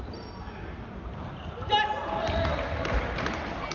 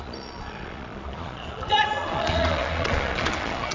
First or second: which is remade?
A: second